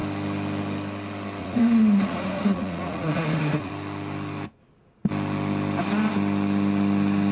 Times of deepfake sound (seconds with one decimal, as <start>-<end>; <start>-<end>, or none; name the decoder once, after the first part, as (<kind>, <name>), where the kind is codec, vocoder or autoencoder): 1.4-3.7 (vocoder, Vocos)